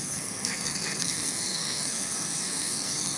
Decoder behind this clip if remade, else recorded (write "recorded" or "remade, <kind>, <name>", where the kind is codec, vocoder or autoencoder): remade, codec, SNAC